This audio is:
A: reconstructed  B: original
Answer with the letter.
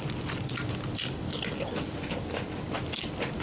A